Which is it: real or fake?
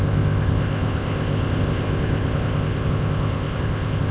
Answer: fake